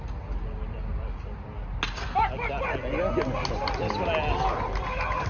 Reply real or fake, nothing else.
real